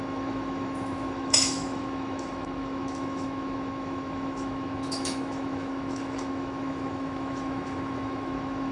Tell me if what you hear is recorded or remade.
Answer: remade